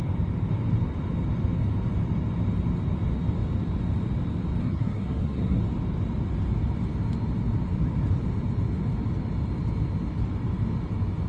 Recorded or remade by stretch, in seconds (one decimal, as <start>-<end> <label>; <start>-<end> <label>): 0.0-4.6 recorded; 4.6-5.6 remade; 5.6-11.3 recorded